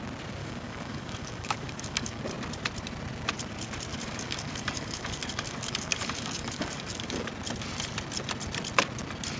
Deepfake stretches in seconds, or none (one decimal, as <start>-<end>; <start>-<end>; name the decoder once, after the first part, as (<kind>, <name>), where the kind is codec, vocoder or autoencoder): 0.4-2.2 (codec, DAC); 3.9-7.3